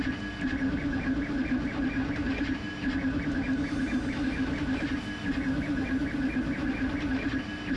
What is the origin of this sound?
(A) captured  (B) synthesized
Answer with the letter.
A